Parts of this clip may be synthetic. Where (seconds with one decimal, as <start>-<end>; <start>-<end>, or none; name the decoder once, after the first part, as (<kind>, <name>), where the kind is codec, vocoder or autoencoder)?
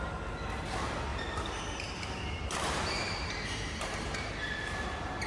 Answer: 1.1-4.3 (vocoder, BigVGAN v2)